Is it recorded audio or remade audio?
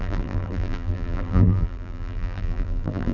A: remade